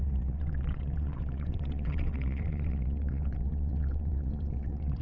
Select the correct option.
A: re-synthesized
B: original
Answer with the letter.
A